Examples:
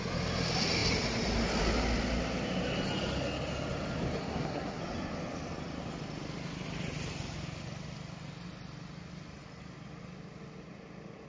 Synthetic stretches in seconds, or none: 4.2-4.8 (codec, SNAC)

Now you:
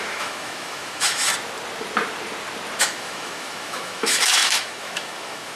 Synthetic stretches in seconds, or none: 0.0-1.3 (autoencoder, DAC-VAE); 2.8-5.6

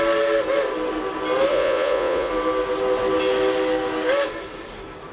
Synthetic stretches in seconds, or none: 1.5-2.3 (vocoder, Vocos)

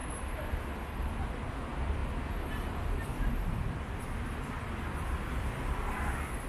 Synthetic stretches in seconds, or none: none

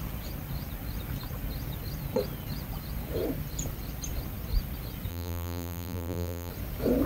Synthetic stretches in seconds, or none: 5.1-6.5 (vocoder, BigVGAN v2)

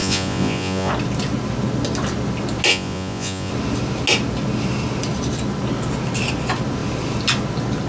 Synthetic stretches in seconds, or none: 0.0-0.9 (vocoder, Vocos); 2.7-3.5